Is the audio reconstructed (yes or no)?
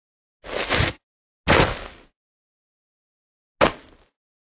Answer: no